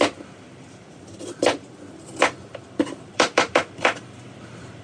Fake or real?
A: fake